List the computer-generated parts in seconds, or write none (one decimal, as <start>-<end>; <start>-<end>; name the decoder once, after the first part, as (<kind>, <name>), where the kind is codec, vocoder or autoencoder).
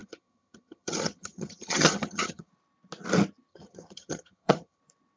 0.0-2.5 (vocoder, HiFi-GAN); 3.5-4.8